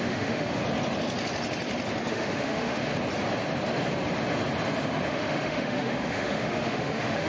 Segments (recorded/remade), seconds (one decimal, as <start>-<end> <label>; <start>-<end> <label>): 0.0-0.6 remade; 0.6-2.1 recorded; 2.1-2.9 remade; 2.9-5.1 recorded; 5.1-7.3 remade